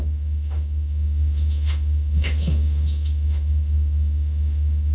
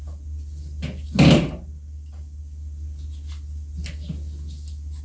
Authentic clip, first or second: second